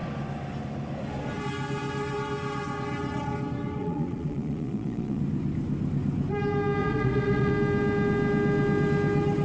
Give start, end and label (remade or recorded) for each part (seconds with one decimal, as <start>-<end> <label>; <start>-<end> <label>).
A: 0.0-3.8 recorded; 3.8-5.2 remade; 5.2-6.8 recorded; 6.8-7.5 remade; 7.5-9.4 recorded